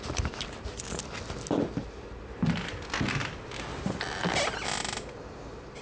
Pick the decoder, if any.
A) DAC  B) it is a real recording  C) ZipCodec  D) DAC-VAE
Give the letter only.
B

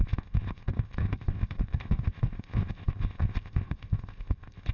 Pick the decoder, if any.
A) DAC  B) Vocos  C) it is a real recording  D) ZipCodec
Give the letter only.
D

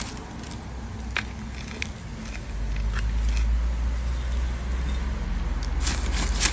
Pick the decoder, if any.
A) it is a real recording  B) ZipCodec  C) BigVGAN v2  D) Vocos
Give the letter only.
A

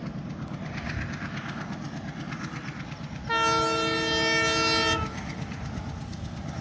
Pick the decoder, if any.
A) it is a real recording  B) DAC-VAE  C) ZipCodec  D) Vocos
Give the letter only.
A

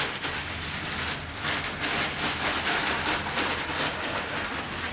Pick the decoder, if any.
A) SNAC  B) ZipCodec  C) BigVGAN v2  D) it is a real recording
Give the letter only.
D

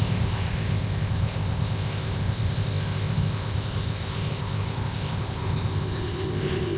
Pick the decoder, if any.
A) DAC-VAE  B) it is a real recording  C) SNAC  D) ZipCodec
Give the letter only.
D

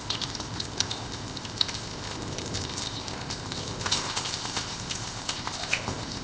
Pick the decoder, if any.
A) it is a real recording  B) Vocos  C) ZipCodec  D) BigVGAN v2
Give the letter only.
C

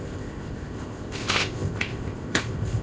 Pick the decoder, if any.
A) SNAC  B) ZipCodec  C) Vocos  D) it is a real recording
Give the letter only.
B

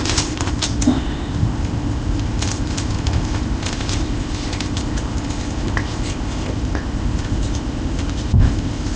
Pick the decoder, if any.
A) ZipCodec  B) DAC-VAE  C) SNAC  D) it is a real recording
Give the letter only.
A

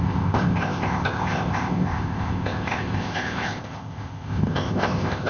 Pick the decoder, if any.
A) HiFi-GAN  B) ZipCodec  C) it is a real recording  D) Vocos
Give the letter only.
B